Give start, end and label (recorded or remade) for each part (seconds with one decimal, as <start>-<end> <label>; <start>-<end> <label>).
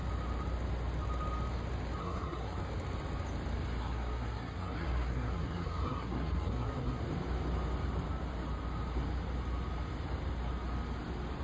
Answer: 0.0-2.0 recorded; 2.0-2.6 remade; 2.6-3.8 recorded; 3.8-7.0 remade; 7.0-11.4 recorded